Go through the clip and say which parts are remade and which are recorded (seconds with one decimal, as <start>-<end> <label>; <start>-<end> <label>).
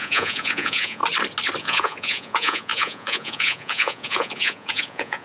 0.0-1.0 remade; 1.0-1.6 recorded; 1.6-5.2 remade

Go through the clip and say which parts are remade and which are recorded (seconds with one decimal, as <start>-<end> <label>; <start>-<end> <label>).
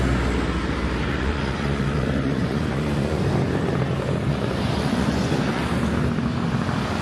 0.0-1.1 recorded; 1.1-3.2 remade; 3.2-4.3 recorded; 4.3-5.6 remade; 5.6-7.0 recorded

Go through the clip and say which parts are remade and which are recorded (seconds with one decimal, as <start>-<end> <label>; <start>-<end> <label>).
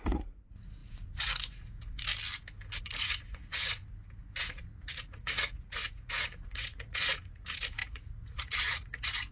0.0-2.1 remade; 2.1-2.8 recorded; 2.8-3.8 remade; 3.8-4.4 recorded; 4.4-9.3 remade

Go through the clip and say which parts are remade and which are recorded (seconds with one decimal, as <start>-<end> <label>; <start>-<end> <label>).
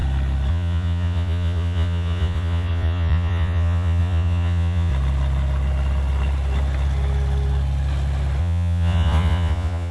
0.0-0.5 recorded; 0.5-4.9 remade; 4.9-8.4 recorded; 8.4-9.9 remade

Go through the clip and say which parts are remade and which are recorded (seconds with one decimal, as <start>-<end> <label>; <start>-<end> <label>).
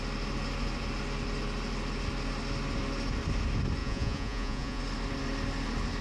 0.0-3.8 recorded; 3.8-4.8 remade; 4.8-6.0 recorded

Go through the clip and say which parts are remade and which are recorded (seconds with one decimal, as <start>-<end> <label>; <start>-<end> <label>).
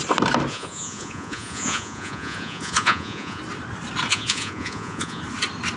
0.0-0.5 recorded; 0.5-3.4 remade; 3.4-4.1 recorded; 4.1-5.2 remade; 5.2-5.8 recorded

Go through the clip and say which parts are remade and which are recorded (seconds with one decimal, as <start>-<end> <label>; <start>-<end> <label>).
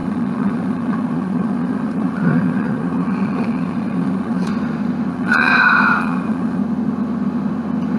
0.0-4.5 remade; 4.5-5.1 recorded; 5.1-5.5 remade; 5.5-6.0 recorded; 6.0-6.6 remade; 6.6-8.0 recorded